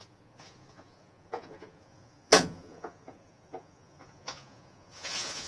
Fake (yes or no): yes